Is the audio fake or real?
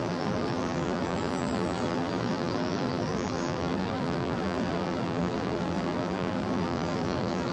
fake